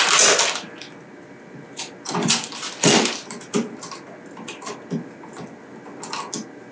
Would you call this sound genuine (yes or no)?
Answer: yes